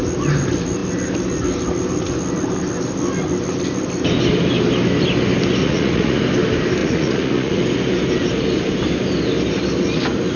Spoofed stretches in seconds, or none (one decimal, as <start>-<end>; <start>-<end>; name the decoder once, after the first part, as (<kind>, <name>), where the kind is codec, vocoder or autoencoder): 5.6-6.2 (vocoder, Vocos); 6.8-7.6